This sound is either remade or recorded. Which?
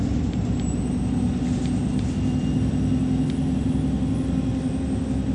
recorded